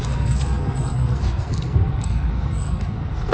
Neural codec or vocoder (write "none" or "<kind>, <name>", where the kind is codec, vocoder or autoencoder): codec, SNAC